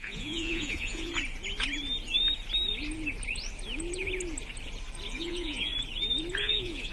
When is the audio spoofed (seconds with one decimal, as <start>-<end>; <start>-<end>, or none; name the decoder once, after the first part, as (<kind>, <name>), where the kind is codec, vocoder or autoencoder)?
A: 0.0-1.1 (vocoder, Vocos); 5.1-5.7; 6.4-6.9